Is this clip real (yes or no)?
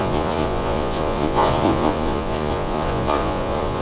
no